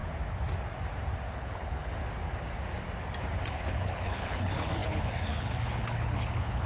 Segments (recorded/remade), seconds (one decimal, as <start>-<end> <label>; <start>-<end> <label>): 0.0-1.3 recorded; 1.3-1.9 remade; 1.9-3.5 recorded; 3.5-6.7 remade